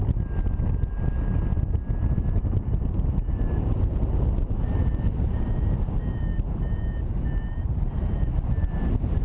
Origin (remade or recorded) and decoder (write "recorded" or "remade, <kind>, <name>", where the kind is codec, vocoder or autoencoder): recorded